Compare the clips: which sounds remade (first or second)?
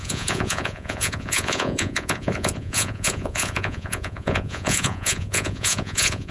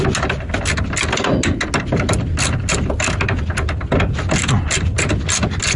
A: first